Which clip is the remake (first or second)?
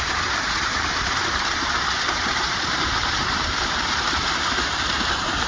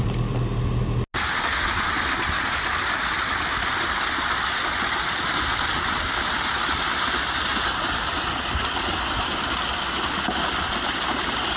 first